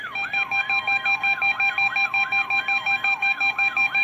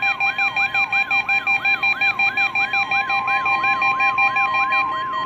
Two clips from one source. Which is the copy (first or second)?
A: first